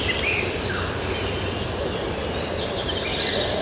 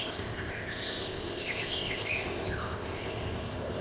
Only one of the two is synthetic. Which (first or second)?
second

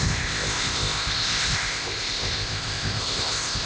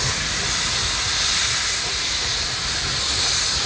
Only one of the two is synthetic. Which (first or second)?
first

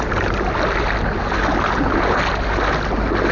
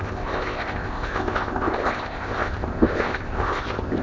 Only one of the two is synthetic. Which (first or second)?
second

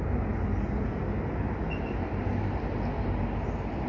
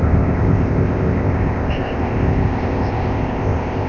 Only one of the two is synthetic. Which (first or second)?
second